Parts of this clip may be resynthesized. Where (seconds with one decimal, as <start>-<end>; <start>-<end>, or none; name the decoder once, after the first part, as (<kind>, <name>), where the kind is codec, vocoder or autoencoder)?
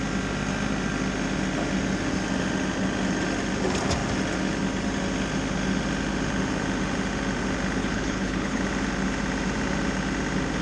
7.8-8.6 (codec, HILCodec)